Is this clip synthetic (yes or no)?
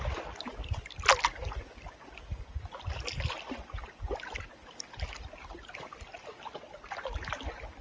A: no